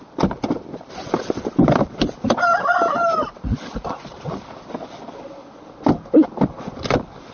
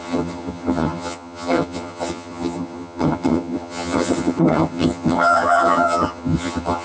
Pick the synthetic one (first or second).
second